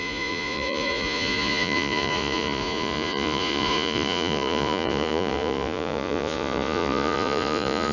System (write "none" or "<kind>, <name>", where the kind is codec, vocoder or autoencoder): vocoder, Vocos